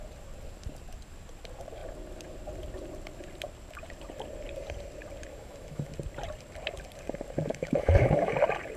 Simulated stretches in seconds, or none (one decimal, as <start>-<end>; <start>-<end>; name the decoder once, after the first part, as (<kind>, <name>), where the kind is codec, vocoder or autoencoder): 5.3-5.9 (autoencoder, DAC-VAE); 7.5-8.3